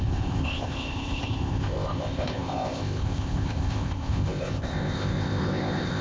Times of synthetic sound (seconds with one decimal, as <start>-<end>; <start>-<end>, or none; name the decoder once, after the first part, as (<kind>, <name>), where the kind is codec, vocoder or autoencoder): 0.0-6.0 (codec, ZipCodec)